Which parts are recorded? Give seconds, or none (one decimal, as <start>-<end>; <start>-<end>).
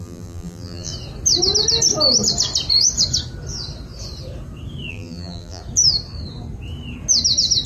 0.9-4.9; 5.6-7.7